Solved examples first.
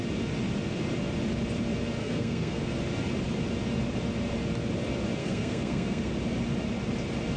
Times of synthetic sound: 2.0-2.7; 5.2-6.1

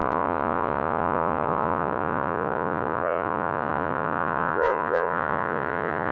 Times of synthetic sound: 0.0-6.1

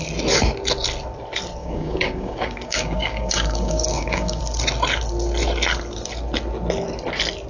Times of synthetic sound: 1.6-4.4